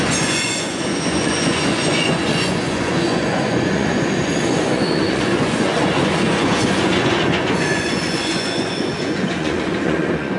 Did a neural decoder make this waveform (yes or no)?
yes